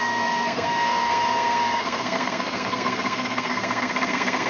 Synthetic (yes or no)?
yes